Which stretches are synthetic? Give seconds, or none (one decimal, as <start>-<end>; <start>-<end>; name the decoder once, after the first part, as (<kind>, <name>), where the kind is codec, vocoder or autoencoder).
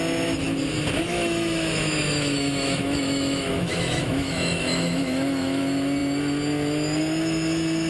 1.1-5.6 (autoencoder, DAC-VAE)